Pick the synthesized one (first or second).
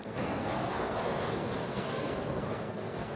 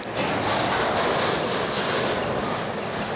first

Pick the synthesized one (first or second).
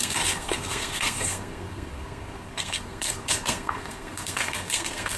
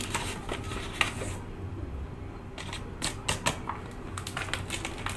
first